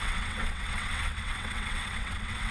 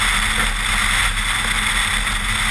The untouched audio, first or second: second